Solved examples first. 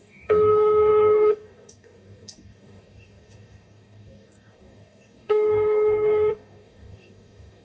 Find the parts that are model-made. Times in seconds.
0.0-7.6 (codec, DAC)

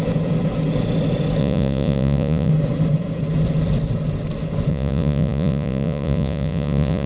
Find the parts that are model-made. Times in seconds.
1.4-2.5 (vocoder, Vocos); 4.7-7.1

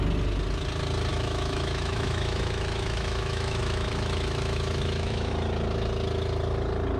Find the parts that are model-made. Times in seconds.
1.1-5.3 (autoencoder, DAC-VAE)

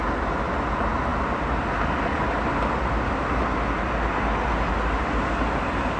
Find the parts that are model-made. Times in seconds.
none

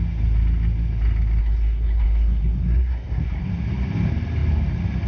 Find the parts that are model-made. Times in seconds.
1.4-3.5 (codec, SNAC)

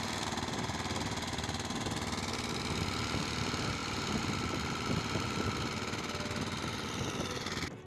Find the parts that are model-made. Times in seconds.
3.8-5.0 (vocoder, BigVGAN v2)